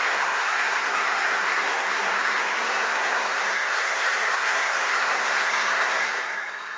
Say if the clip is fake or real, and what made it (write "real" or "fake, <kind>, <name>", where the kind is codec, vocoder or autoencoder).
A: fake, codec, SNAC